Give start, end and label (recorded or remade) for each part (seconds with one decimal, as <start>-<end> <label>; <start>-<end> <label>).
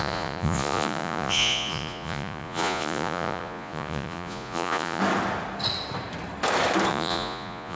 0.0-5.0 remade; 5.0-6.9 recorded; 6.9-7.8 remade